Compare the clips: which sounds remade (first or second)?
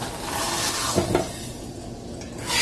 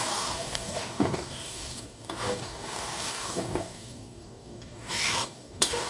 second